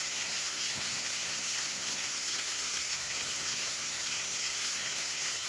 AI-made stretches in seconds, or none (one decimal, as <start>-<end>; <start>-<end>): 0.0-5.5